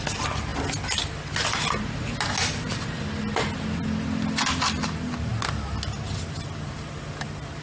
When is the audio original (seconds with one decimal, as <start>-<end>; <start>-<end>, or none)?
0.0-7.6